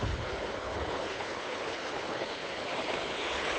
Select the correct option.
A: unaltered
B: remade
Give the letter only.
B